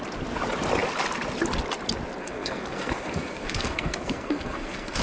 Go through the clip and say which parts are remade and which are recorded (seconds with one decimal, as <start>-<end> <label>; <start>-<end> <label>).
0.0-2.2 recorded; 2.2-5.0 remade